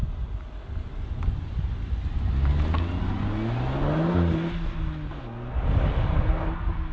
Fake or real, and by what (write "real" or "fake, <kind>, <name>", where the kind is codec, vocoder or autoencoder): real